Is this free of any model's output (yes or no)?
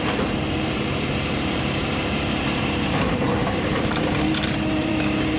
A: no